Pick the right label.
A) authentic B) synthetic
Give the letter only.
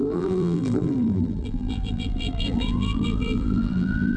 B